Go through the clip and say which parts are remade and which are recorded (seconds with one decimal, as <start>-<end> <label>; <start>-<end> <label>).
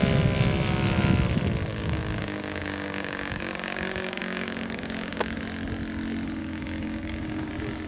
0.0-1.7 recorded; 1.7-5.4 remade; 5.4-6.4 recorded; 6.4-7.5 remade; 7.5-7.9 recorded